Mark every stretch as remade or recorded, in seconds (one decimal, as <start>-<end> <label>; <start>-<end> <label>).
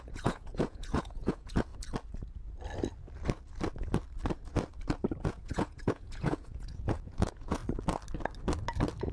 0.0-1.7 remade; 1.7-5.3 recorded; 5.3-7.6 remade; 7.6-9.1 recorded